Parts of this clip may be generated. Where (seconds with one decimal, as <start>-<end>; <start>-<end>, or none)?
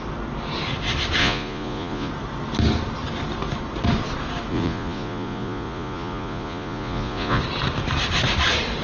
1.2-2.1; 4.5-7.4